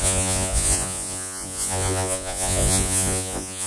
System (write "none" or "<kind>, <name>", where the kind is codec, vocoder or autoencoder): vocoder, Vocos